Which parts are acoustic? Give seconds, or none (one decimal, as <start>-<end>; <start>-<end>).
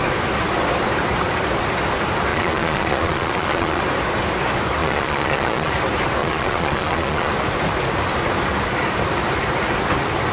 0.0-2.3; 3.8-4.8; 5.7-6.2; 7.3-10.3